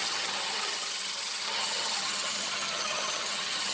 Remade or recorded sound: remade